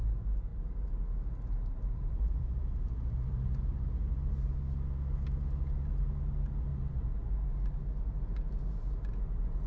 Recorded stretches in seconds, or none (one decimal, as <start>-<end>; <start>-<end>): 0.0-0.5; 4.3-6.7; 7.3-9.7

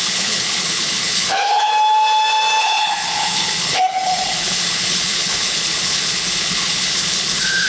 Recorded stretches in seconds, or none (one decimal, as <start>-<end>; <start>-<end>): 1.7-2.6

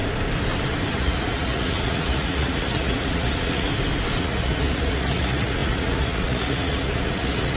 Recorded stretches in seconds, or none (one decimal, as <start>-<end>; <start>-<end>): 0.0-0.9; 3.7-4.2

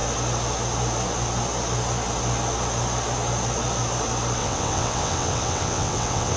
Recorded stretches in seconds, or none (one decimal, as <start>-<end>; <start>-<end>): 0.0-4.4

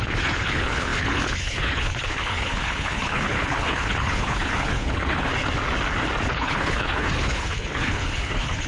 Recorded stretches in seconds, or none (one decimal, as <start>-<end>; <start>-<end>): 5.3-6.3

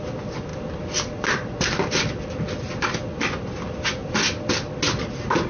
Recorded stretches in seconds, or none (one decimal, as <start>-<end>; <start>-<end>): 0.0-5.5

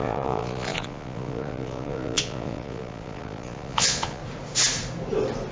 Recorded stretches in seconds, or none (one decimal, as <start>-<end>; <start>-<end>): 4.2-5.5